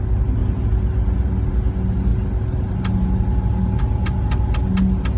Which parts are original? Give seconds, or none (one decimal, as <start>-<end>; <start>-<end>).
0.0-5.2